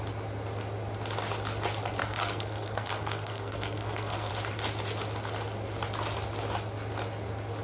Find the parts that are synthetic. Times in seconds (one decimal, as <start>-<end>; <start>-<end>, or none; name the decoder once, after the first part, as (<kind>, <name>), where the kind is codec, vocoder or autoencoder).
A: 2.0-4.3 (codec, SNAC)